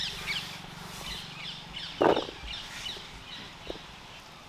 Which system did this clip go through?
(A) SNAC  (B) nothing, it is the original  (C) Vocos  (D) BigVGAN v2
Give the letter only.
B